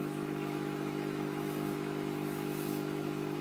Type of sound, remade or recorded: remade